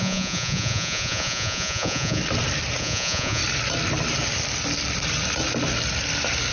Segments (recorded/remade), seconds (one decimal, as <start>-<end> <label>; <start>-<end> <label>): 0.0-2.2 remade; 2.2-2.8 recorded; 2.8-3.4 remade; 3.4-6.5 recorded